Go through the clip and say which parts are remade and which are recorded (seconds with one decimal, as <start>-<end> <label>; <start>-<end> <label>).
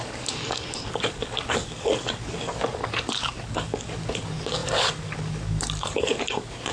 0.0-6.7 remade